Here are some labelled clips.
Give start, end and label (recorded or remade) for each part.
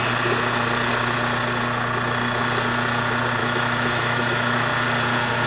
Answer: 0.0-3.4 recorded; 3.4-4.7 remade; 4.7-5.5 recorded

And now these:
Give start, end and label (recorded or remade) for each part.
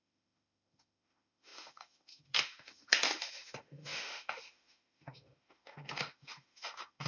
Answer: 0.0-7.1 remade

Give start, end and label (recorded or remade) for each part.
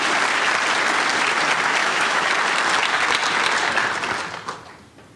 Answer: 0.0-1.8 recorded; 1.8-2.3 remade; 2.3-5.2 recorded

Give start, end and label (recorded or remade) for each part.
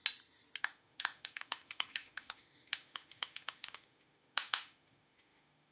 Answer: 0.0-0.6 recorded; 0.6-5.7 remade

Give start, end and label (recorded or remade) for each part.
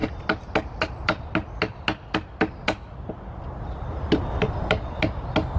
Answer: 0.0-5.6 recorded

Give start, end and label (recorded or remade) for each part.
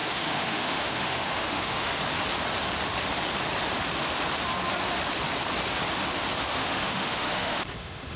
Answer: 0.0-1.9 remade; 1.9-6.5 recorded; 6.5-8.2 remade